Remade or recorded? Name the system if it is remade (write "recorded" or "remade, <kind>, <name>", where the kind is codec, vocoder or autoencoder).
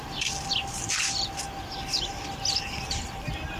remade, vocoder, BigVGAN v2